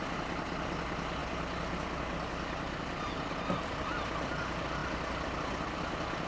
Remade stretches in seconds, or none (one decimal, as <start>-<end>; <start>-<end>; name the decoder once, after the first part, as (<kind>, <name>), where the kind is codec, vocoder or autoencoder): none